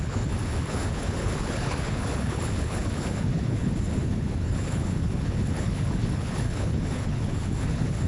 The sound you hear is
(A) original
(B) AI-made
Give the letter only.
B